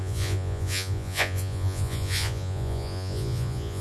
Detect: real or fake fake